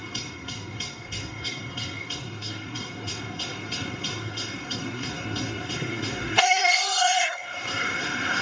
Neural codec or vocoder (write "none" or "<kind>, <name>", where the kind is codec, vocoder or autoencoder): codec, SNAC